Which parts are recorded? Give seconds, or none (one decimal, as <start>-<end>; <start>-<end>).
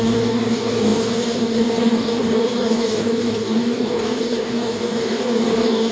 none